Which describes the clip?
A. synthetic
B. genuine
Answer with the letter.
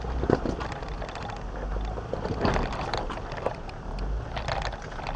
B